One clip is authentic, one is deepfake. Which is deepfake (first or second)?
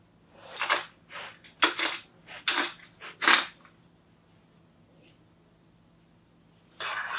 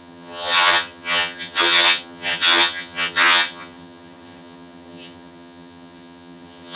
second